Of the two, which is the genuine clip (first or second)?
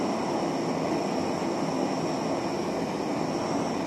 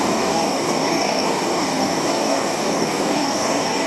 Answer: first